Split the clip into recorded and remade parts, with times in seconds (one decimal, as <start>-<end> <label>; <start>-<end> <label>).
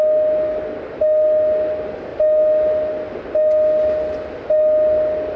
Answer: 0.0-5.4 recorded